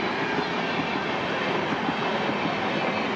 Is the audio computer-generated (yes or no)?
no